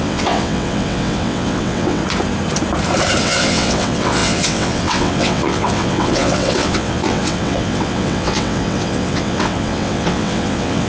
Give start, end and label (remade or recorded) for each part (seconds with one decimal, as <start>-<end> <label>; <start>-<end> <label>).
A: 0.0-2.0 remade; 2.0-3.2 recorded; 3.2-10.9 remade